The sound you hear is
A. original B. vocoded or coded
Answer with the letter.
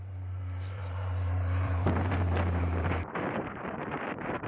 B